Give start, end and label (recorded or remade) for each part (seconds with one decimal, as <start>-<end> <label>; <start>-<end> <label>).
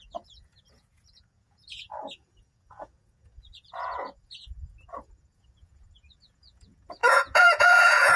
0.0-8.2 remade